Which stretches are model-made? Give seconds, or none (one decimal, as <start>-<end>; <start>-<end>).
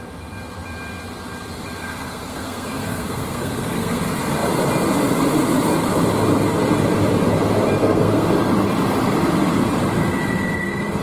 1.8-4.0; 7.8-8.3